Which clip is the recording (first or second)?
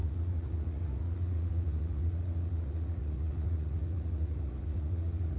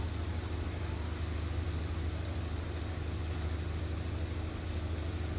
second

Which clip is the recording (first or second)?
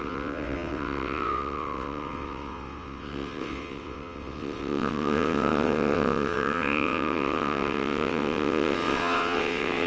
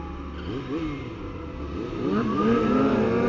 second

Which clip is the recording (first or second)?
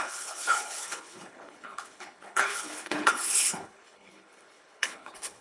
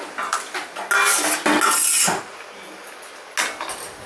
second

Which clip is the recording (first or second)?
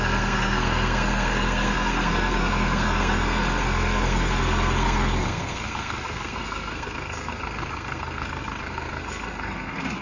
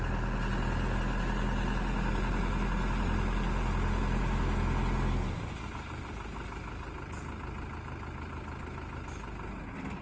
second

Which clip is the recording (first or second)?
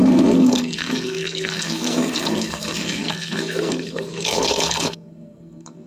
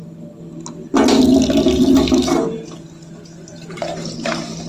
second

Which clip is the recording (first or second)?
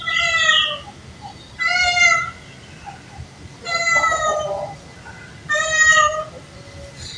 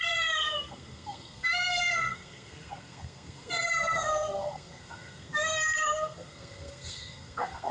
first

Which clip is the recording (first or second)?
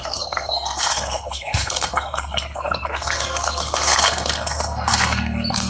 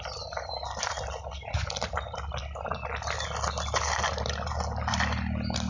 second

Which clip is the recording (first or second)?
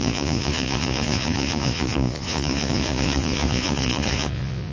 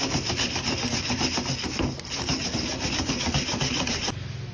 second